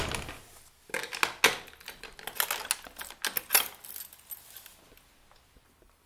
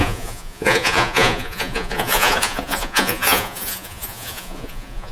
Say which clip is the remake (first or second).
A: second